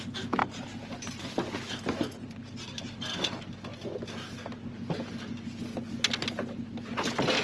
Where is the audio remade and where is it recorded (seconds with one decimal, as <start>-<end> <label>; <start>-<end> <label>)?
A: 0.0-7.4 recorded